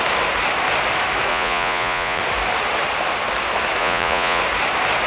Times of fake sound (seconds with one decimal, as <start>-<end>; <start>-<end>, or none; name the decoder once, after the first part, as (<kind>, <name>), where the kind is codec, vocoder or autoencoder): 1.3-2.2 (vocoder, Vocos); 3.8-4.4